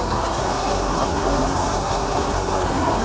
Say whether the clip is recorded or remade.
remade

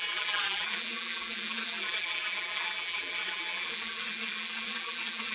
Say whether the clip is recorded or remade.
remade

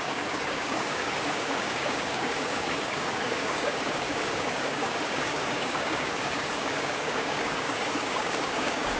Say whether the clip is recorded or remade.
remade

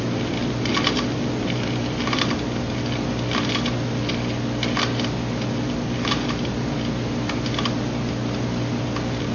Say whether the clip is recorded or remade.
recorded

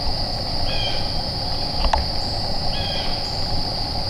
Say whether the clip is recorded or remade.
recorded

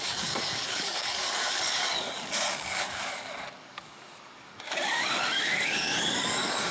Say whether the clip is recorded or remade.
remade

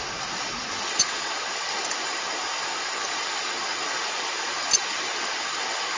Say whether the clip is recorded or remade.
remade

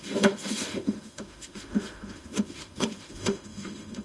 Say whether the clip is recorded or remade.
remade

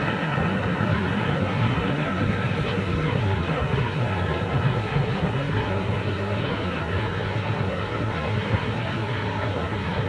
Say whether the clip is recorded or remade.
remade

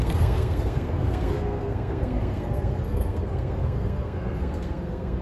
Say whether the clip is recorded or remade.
remade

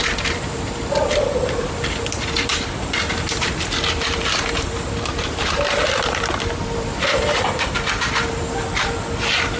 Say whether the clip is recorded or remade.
remade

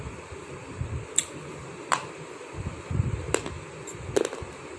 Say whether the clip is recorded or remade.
recorded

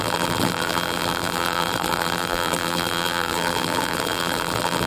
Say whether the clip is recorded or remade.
remade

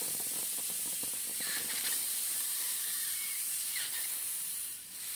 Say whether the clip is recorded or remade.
remade